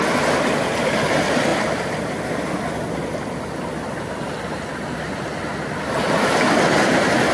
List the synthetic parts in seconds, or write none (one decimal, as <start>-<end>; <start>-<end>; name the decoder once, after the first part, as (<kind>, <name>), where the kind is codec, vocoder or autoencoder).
none